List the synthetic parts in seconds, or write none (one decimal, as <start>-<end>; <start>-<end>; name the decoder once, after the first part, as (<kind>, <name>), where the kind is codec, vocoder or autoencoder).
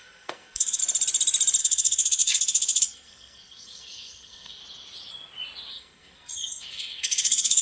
0.0-0.8 (codec, SNAC); 1.6-4.6; 5.7-7.6